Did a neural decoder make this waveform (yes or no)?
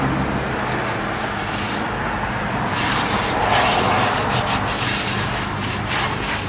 no